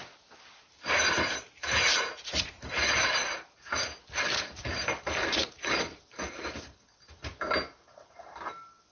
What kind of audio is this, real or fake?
real